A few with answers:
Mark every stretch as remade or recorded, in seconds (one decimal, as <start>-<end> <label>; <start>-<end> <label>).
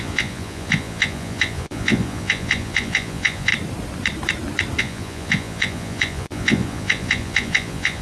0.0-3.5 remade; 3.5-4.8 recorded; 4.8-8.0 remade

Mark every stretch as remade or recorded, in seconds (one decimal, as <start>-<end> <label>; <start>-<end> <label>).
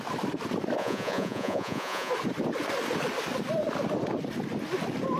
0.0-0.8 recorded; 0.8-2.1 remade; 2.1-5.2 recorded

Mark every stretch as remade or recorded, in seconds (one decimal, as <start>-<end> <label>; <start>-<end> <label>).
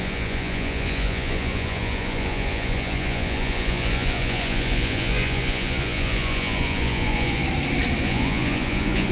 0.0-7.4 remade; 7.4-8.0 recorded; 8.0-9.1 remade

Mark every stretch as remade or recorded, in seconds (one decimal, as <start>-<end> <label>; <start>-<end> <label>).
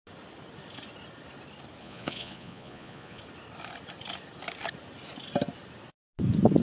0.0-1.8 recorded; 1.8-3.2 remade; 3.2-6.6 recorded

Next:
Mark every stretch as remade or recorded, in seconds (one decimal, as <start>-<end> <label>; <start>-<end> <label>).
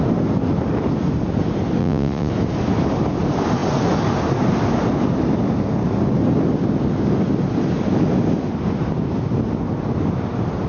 0.0-1.8 recorded; 1.8-2.3 remade; 2.3-10.7 recorded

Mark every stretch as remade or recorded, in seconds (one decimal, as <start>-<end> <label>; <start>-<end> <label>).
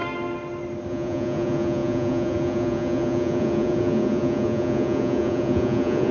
0.0-0.9 recorded; 0.9-6.1 remade